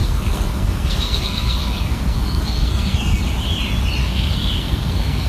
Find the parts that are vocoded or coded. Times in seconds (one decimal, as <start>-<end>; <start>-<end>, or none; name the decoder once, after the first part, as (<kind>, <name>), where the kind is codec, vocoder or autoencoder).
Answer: 0.0-3.2 (codec, SNAC); 4.0-5.3